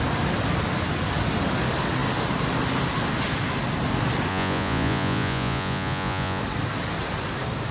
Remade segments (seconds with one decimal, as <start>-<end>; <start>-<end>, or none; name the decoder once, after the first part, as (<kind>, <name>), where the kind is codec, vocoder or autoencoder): 4.3-6.4 (vocoder, Vocos)